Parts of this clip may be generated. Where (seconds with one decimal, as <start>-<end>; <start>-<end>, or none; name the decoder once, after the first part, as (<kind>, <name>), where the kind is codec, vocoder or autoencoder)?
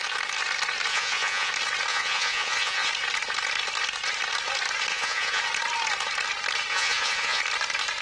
0.9-1.5 (vocoder, Vocos); 1.9-2.9; 4.9-5.4; 6.7-7.4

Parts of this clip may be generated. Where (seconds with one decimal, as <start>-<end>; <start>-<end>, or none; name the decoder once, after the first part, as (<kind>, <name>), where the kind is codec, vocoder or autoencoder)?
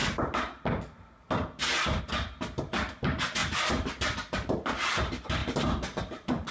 none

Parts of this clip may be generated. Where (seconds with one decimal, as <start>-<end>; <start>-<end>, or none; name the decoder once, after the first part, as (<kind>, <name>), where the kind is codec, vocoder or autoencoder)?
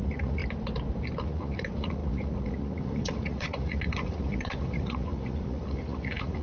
0.0-0.4 (vocoder, Vocos); 1.2-6.4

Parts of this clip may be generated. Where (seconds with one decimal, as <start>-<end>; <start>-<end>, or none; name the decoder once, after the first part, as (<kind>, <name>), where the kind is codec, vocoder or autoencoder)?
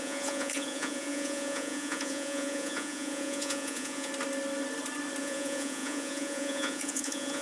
0.0-4.1 (vocoder, Vocos); 5.2-7.4